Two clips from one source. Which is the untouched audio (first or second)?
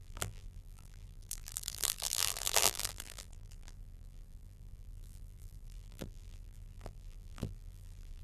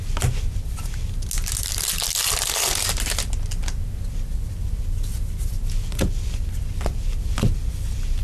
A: second